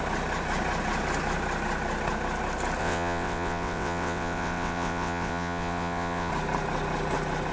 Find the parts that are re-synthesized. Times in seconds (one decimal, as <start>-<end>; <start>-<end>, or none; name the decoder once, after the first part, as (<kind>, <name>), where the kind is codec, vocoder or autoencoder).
2.8-6.3 (vocoder, WaveNeXt)